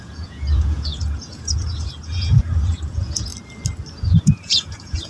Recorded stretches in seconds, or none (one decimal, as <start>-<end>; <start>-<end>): 3.3-4.0